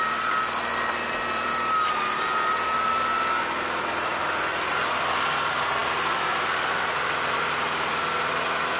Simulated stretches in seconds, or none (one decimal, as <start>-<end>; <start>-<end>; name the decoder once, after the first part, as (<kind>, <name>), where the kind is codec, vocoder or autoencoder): 0.0-4.1 (vocoder, BigVGAN v2); 4.7-8.8